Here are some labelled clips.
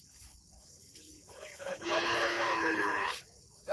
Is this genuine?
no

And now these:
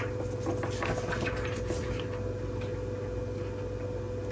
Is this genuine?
yes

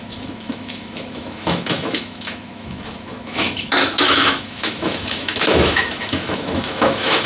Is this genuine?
no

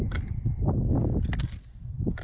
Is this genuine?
yes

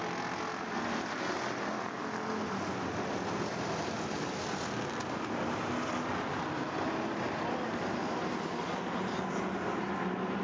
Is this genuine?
yes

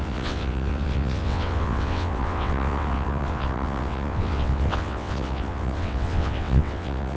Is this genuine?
no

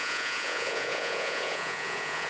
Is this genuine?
no